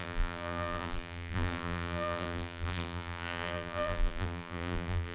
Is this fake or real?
fake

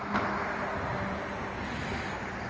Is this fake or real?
real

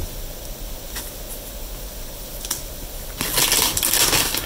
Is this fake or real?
real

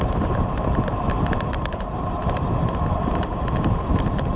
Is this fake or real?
fake